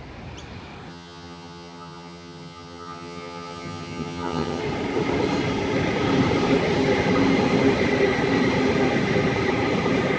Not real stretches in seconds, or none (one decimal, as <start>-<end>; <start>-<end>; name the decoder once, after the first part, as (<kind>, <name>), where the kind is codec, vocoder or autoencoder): 0.9-4.6 (vocoder, HiFi-GAN)

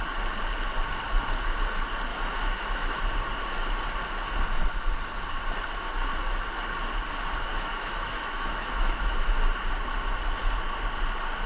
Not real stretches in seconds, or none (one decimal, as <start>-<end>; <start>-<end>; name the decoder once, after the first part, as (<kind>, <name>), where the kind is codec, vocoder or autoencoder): 2.1-3.0 (autoencoder, DAC-VAE); 7.5-9.3

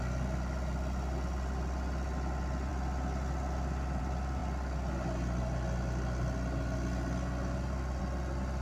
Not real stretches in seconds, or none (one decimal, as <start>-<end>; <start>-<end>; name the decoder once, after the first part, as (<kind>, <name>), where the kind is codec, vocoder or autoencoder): none

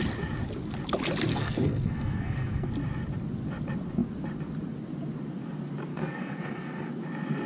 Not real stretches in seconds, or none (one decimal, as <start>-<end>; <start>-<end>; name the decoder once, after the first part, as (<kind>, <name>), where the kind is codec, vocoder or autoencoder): 1.3-2.7 (codec, SNAC); 5.9-6.9

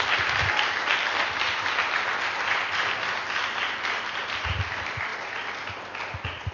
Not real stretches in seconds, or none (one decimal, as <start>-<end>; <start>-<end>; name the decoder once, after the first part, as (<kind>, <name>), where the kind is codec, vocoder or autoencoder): none

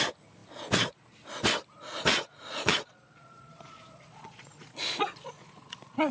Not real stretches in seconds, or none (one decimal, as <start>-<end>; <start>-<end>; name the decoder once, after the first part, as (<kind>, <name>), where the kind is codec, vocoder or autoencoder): 2.1-6.1 (vocoder, Vocos)

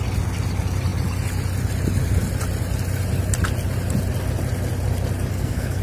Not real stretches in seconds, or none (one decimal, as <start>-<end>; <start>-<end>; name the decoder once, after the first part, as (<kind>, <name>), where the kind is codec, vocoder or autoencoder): 5.3-5.8 (codec, SNAC)

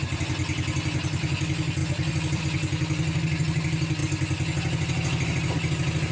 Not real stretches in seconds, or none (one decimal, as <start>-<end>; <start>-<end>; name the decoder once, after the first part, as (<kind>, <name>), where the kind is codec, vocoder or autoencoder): 1.8-2.4 (vocoder, BigVGAN v2)